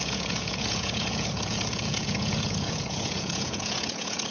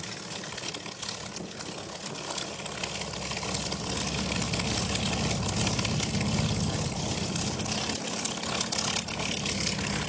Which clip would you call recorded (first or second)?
second